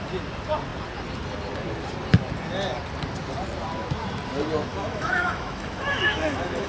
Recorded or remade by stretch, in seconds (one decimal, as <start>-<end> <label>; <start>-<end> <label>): 0.0-4.7 recorded; 4.7-6.7 remade